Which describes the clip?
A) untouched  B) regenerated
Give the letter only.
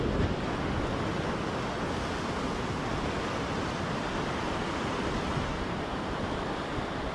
A